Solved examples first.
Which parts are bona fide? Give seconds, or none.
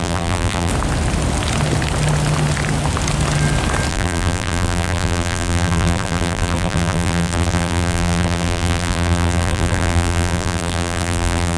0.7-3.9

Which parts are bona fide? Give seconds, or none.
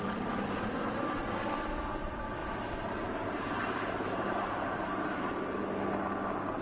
0.0-2.4; 5.6-6.6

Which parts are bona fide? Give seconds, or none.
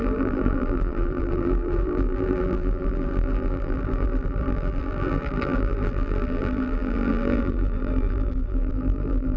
none